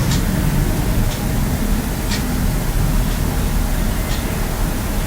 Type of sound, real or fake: real